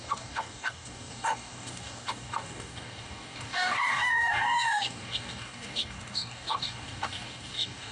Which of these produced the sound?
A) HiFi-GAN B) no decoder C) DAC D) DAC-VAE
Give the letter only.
C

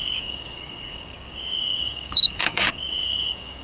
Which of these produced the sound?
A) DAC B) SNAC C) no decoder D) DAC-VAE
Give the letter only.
A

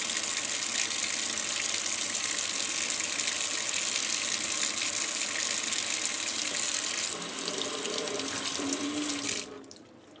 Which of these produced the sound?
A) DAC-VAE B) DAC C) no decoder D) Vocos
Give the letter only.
C